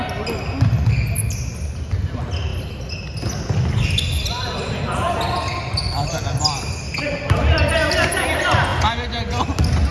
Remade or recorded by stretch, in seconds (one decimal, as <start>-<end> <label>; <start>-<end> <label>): 0.0-9.9 recorded